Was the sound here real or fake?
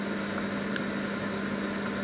real